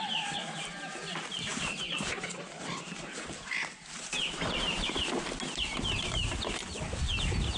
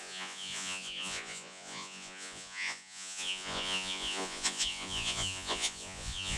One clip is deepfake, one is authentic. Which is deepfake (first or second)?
second